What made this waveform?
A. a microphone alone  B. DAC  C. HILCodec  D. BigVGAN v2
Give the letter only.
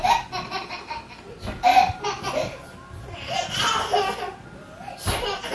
A